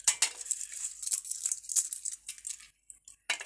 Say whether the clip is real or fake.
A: real